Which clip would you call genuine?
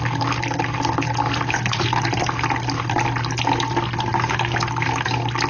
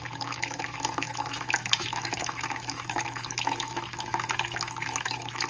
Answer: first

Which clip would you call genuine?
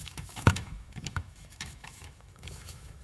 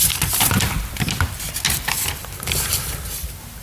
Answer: second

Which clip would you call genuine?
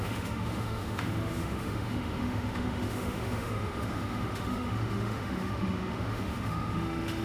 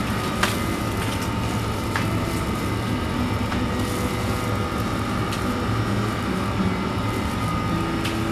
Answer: second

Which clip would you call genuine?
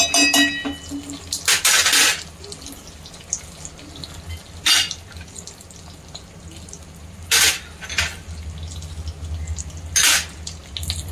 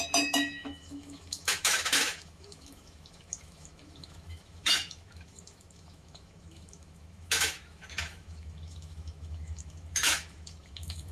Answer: first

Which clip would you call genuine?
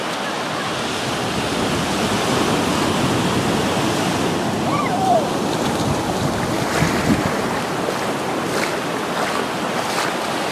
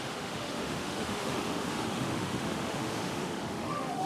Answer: first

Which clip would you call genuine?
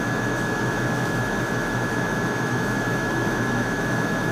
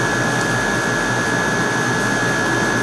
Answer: second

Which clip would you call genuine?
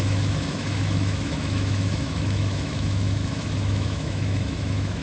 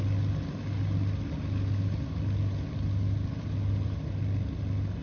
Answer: second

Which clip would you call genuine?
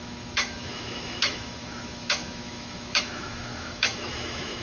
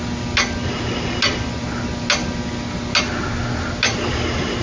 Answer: second